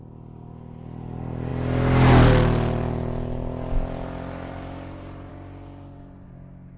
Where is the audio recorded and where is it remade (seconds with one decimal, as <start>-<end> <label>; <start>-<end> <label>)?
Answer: 0.0-6.8 recorded